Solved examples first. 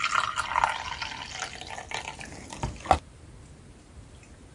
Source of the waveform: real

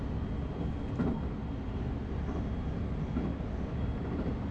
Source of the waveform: real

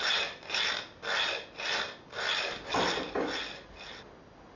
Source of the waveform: real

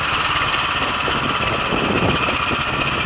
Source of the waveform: real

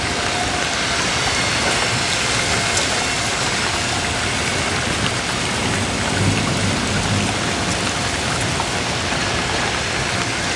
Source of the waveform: real